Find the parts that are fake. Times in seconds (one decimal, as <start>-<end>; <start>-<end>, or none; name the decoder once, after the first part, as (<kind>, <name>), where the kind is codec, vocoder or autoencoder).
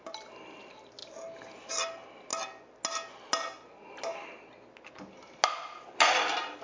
none